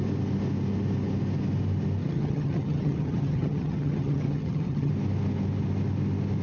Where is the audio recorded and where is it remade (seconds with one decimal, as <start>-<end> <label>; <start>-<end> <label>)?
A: 0.0-2.0 recorded; 2.0-4.9 remade; 4.9-6.4 recorded